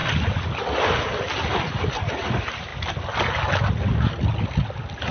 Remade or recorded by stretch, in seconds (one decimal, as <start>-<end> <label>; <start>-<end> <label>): 0.0-5.1 recorded